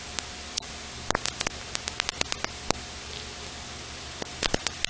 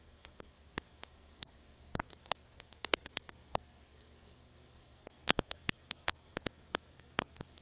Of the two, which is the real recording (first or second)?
first